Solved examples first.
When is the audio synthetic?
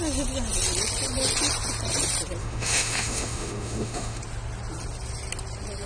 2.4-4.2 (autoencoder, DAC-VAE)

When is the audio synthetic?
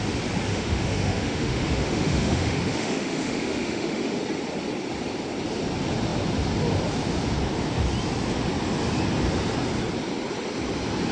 0.5-4.2 (autoencoder, DAC-VAE)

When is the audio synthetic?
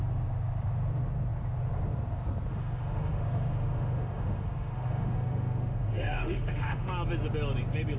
2.5-6.9 (autoencoder, DAC-VAE)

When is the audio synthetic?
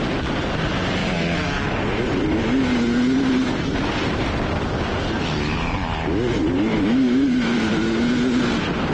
6.7-7.7 (autoencoder, DAC-VAE)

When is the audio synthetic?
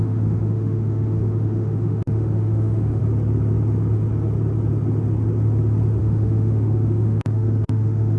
0.0-3.0 (autoencoder, DAC-VAE); 6.0-8.2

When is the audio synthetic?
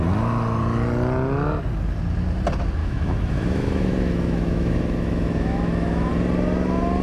2.8-6.1 (autoencoder, DAC-VAE)